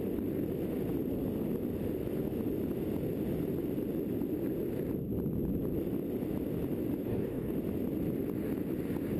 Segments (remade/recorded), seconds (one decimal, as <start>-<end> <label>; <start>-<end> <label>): 0.0-7.0 recorded; 7.0-7.5 remade; 7.5-9.2 recorded